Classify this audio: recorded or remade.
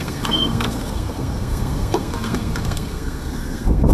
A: remade